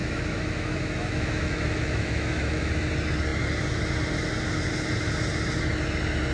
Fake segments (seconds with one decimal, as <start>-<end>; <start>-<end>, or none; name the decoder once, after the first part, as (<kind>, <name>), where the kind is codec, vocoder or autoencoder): 0.0-2.7 (autoencoder, DAC-VAE)